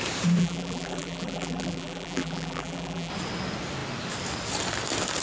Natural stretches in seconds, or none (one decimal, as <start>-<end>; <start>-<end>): 0.0-0.4; 3.1-5.2